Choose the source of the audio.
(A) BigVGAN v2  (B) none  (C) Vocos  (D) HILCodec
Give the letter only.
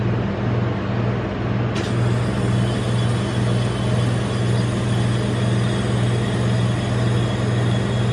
B